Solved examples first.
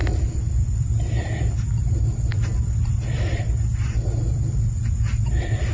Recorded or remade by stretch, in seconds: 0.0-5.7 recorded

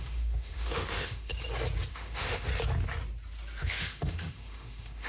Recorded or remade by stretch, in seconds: 0.0-1.3 remade; 1.3-1.9 recorded; 1.9-2.5 remade; 2.5-3.6 recorded; 3.6-5.1 remade

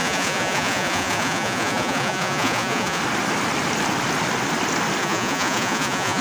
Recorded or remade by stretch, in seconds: 0.0-3.0 remade; 3.0-5.0 recorded; 5.0-6.2 remade